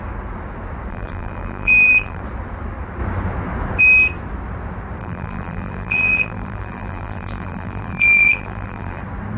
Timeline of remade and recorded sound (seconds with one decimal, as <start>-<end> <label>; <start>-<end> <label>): 0.0-0.9 recorded; 0.9-2.2 remade; 2.2-5.0 recorded; 5.0-9.0 remade; 9.0-9.4 recorded